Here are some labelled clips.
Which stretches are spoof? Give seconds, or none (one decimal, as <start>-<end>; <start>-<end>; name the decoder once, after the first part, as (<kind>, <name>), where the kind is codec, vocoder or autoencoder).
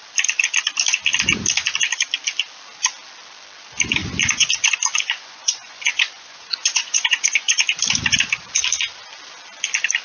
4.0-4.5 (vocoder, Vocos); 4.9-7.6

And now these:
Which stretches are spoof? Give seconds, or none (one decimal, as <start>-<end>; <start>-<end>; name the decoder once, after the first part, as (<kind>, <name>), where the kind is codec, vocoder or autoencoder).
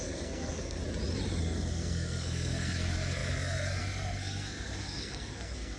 0.0-0.8 (codec, SNAC); 1.4-5.8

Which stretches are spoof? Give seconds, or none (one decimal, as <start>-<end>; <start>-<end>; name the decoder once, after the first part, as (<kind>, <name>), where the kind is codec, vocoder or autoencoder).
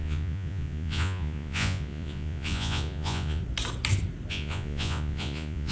0.0-3.4 (vocoder, Vocos); 4.3-5.7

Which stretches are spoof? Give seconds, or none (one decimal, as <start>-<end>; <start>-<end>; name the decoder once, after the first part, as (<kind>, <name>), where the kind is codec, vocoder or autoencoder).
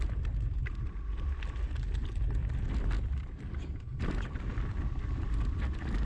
2.4-3.8 (vocoder, BigVGAN v2); 4.5-5.4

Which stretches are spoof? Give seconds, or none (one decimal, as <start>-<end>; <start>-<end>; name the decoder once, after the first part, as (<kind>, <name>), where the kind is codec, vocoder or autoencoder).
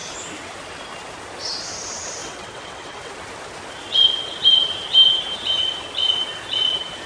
2.2-3.1 (vocoder, WaveNeXt)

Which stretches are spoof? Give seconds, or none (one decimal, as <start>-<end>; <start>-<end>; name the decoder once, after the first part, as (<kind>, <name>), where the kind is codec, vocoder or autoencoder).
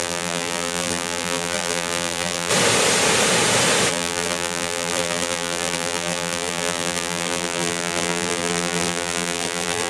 0.0-2.5 (vocoder, BigVGAN v2); 3.9-9.9